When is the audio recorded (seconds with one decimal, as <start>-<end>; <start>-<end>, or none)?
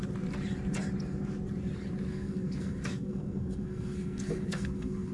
0.0-2.1